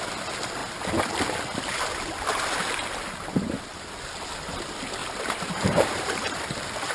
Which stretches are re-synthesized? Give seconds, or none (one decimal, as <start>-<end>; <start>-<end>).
5.0-6.4

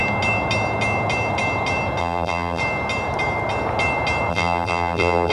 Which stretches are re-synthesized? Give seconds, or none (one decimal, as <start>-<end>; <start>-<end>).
2.0-2.6; 4.3-5.3